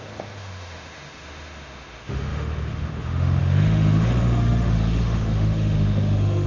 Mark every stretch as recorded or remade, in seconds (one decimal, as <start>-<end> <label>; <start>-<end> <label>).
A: 0.0-6.5 remade